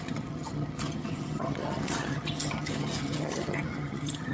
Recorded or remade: remade